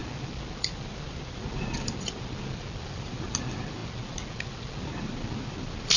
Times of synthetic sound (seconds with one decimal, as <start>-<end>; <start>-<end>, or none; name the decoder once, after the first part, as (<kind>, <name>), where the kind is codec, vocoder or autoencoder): none